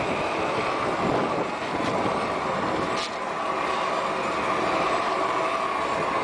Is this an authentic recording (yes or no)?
yes